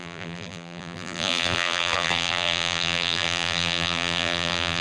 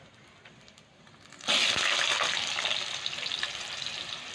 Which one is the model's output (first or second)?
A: first